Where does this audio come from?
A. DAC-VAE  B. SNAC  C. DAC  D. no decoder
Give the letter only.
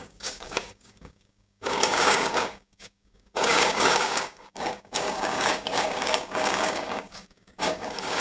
C